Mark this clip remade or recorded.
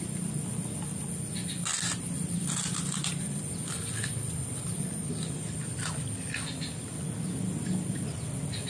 recorded